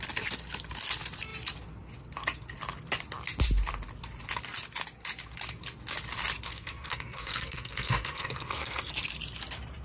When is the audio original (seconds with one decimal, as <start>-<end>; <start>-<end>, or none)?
0.0-6.5; 8.9-9.8